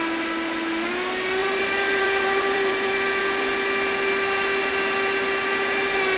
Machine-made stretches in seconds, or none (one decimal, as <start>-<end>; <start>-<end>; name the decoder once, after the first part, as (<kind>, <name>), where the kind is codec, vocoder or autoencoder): 1.4-3.2 (vocoder, BigVGAN v2)